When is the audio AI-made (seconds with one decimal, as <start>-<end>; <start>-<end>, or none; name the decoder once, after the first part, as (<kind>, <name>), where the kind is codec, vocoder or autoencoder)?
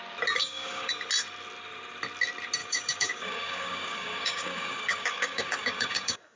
0.4-0.9 (codec, DAC); 2.6-6.4